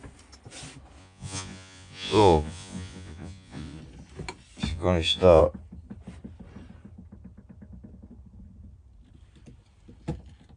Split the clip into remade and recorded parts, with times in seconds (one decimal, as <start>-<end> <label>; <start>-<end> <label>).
0.0-1.0 recorded; 1.0-3.8 remade; 3.8-4.7 recorded; 4.7-5.4 remade; 5.4-10.6 recorded